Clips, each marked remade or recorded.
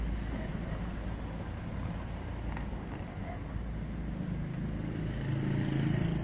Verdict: recorded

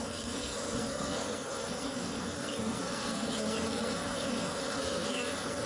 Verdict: remade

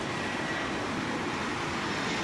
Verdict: recorded